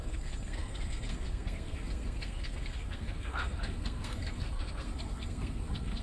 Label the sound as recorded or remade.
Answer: remade